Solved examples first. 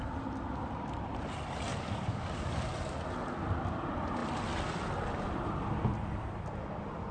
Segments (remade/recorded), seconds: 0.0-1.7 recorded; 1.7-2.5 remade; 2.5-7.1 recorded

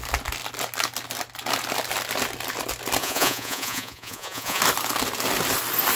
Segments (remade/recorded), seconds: 0.0-3.0 recorded; 3.0-4.6 remade; 4.6-6.0 recorded

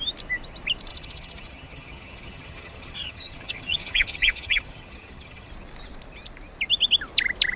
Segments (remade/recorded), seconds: 0.0-0.9 recorded; 0.9-5.5 remade; 5.5-7.6 recorded

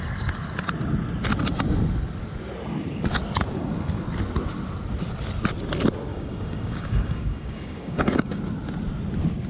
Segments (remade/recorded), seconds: 0.0-6.1 recorded; 6.1-8.4 remade; 8.4-9.5 recorded

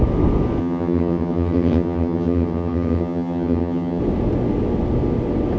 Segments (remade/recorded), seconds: 0.0-0.6 recorded; 0.6-4.0 remade; 4.0-5.6 recorded

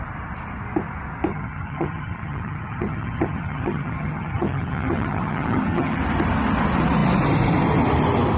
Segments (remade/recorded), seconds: 0.0-1.3 recorded; 1.3-6.0 remade; 6.0-8.4 recorded